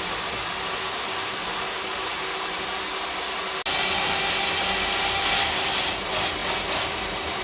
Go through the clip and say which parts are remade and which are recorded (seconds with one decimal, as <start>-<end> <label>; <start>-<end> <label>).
0.0-7.4 recorded

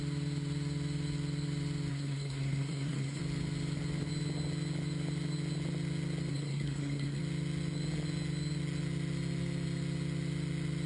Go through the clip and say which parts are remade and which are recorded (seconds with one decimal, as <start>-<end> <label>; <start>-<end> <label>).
0.0-1.9 recorded; 1.9-3.2 remade; 3.2-6.3 recorded; 6.3-7.2 remade; 7.2-10.9 recorded

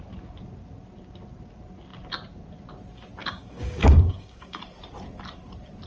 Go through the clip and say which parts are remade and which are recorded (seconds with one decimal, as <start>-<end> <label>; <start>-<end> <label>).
0.0-3.2 recorded; 3.2-4.6 remade; 4.6-5.9 recorded

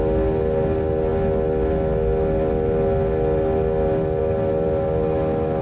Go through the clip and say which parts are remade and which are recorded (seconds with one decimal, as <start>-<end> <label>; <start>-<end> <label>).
0.0-5.6 recorded